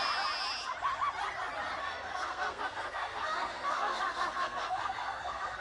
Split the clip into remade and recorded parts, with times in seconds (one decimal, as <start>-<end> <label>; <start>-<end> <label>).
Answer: 0.0-1.8 recorded; 1.8-5.6 remade